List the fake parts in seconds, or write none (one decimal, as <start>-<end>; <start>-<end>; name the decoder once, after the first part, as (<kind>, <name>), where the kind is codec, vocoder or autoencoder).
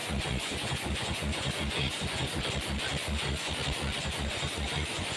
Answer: 0.0-2.4 (vocoder, Vocos); 3.0-3.5; 4.0-5.2